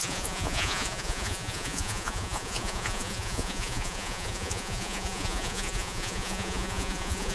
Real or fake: fake